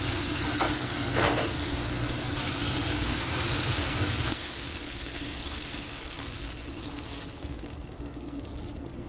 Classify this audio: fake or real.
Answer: fake